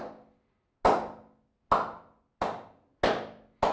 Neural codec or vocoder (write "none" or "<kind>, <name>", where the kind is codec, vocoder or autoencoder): none